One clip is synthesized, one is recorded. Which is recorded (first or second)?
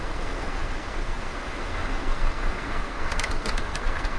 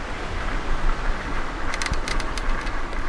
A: second